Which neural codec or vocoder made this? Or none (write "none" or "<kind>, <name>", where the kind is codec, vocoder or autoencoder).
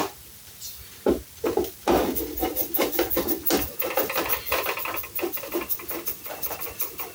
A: none